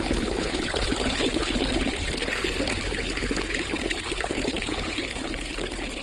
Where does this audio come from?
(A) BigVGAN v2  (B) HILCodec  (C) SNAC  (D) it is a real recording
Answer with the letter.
B